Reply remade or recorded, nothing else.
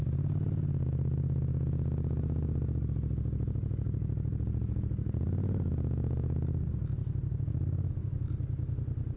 recorded